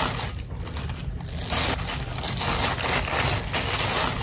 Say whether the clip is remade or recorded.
recorded